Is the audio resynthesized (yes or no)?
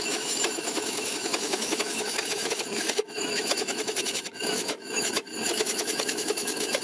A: yes